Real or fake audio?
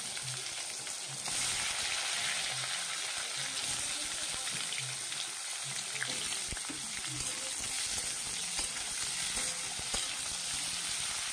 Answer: real